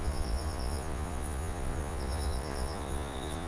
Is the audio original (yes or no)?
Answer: no